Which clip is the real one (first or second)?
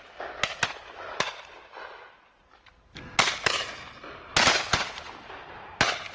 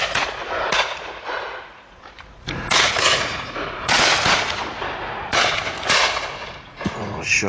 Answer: first